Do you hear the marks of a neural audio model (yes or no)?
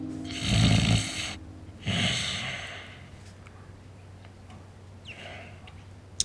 no